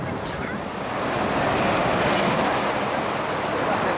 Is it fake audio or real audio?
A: real